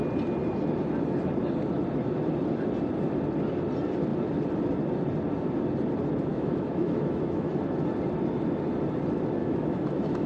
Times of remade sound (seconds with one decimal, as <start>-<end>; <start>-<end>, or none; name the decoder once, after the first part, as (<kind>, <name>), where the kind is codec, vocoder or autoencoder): 6.3-7.5 (autoencoder, DAC-VAE); 9.4-10.3